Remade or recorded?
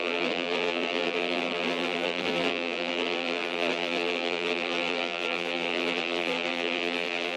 remade